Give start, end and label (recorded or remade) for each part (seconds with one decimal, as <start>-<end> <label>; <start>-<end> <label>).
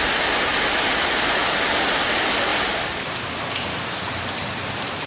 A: 0.0-5.1 recorded